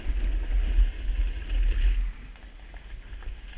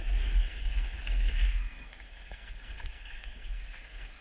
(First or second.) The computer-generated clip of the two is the second